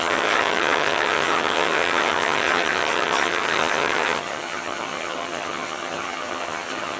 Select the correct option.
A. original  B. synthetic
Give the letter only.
B